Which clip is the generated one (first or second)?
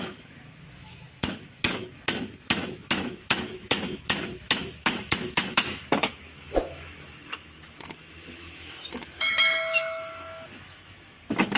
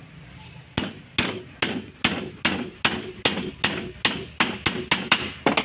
first